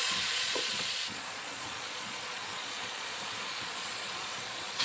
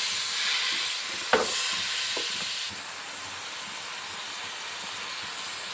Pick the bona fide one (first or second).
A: second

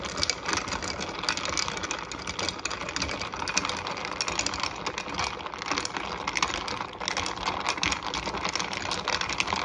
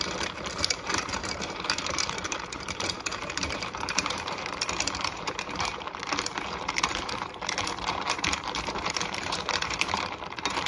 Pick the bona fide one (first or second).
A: first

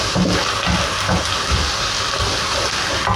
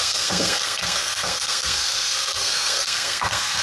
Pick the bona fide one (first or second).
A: first